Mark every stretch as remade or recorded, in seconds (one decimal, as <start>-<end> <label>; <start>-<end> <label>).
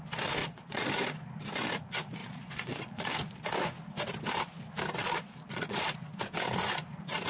0.0-0.4 recorded; 0.4-0.9 remade; 0.9-2.2 recorded; 2.2-3.1 remade; 3.1-5.0 recorded; 5.0-5.8 remade; 5.8-7.3 recorded